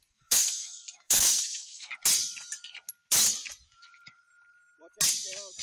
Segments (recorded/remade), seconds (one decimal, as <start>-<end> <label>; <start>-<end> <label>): 0.0-1.9 remade; 1.9-5.6 recorded